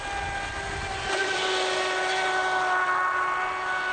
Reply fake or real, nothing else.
real